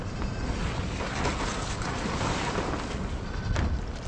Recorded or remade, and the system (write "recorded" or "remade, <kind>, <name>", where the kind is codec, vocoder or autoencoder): recorded